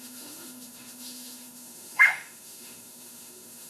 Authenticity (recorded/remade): remade